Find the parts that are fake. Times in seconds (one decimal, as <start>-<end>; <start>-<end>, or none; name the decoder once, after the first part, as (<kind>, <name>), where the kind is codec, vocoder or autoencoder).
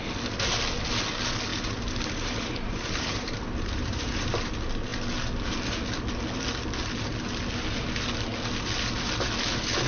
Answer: 1.5-4.5 (vocoder, BigVGAN v2)